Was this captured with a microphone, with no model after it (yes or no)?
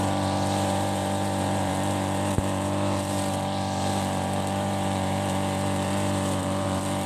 no